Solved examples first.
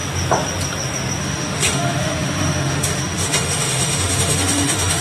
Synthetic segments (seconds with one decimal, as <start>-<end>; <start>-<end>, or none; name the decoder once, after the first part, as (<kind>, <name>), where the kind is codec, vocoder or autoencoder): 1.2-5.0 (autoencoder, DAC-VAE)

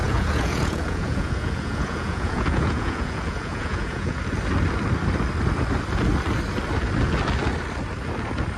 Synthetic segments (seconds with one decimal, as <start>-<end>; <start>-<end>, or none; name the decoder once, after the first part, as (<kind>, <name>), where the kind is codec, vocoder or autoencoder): 0.0-4.2 (vocoder, Vocos)

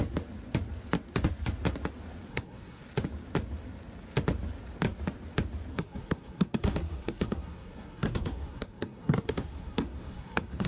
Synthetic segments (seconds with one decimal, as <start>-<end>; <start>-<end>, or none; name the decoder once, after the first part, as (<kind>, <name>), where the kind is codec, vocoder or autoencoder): 2.3-2.8 (codec, SNAC); 5.7-10.7

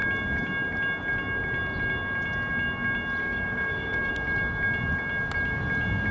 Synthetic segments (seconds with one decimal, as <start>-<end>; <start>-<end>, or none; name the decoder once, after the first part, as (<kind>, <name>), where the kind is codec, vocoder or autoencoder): 3.2-4.1 (codec, DAC)